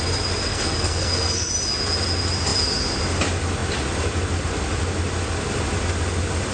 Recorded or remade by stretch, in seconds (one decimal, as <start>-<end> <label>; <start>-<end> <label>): 0.0-0.5 recorded; 0.5-1.5 remade; 1.5-6.5 recorded